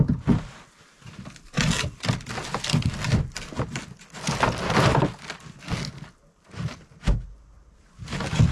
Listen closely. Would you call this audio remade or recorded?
recorded